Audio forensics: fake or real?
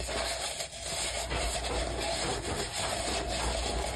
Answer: real